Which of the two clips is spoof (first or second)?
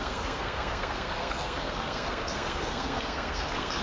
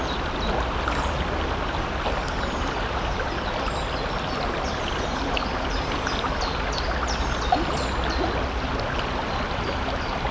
first